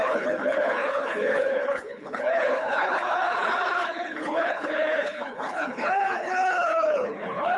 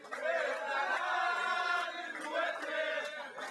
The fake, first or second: first